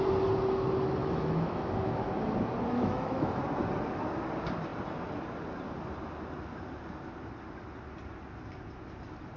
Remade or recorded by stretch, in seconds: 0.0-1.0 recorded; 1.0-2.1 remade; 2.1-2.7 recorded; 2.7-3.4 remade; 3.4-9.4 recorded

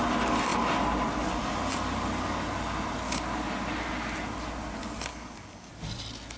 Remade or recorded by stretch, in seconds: 0.0-5.1 recorded; 5.1-5.7 remade; 5.7-6.4 recorded

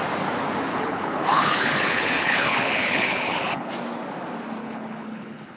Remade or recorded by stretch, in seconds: 0.0-0.7 recorded; 0.7-3.7 remade; 3.7-4.6 recorded; 4.6-5.6 remade

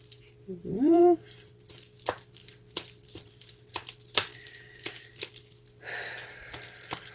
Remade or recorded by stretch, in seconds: 0.0-0.6 recorded; 0.6-1.2 remade; 1.2-2.4 recorded; 2.4-3.3 remade; 3.3-7.1 recorded

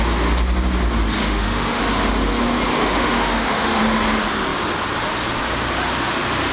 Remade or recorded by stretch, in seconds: 0.0-1.2 recorded; 1.2-1.8 remade; 1.8-2.8 recorded; 2.8-3.8 remade; 3.8-6.5 recorded

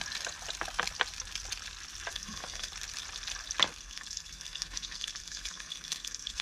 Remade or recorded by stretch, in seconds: 0.0-2.1 recorded; 2.1-2.7 remade; 2.7-3.7 recorded; 3.7-6.4 remade

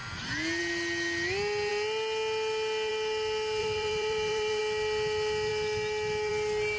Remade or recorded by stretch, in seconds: 0.0-3.6 recorded; 3.6-4.6 remade; 4.6-6.8 recorded